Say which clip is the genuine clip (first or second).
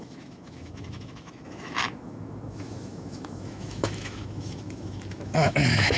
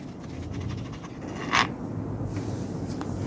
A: second